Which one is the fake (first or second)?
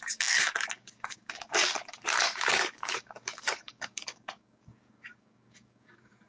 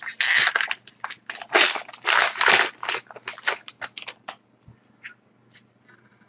first